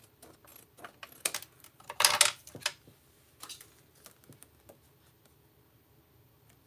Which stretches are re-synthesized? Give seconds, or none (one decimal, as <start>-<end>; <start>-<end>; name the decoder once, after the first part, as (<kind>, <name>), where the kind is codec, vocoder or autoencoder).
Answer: none